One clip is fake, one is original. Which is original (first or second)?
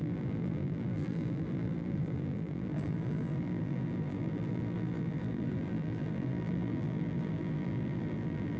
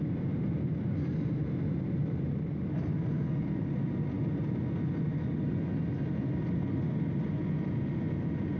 second